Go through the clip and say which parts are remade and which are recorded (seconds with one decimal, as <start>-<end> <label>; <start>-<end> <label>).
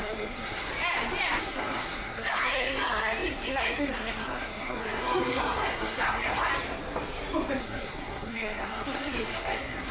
0.0-0.7 remade; 0.7-1.4 recorded; 1.4-6.5 remade; 6.5-7.6 recorded; 7.6-9.9 remade